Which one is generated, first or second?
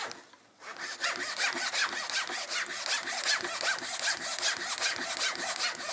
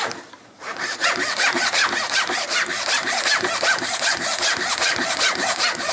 second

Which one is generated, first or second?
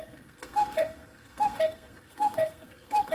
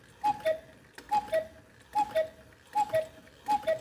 first